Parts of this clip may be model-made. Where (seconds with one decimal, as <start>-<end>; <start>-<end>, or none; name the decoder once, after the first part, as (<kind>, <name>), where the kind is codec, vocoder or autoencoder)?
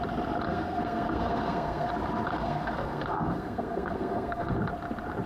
0.5-1.9 (codec, SNAC); 2.3-4.6